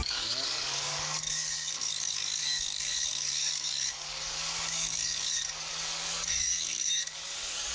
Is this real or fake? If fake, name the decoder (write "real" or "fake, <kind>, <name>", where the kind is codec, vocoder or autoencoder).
fake, codec, DAC